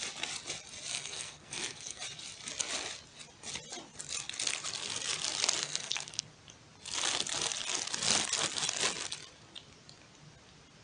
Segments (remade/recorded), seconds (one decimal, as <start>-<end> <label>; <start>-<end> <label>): 0.0-0.9 recorded; 0.9-2.0 remade; 2.0-5.6 recorded; 5.6-6.2 remade; 6.2-10.8 recorded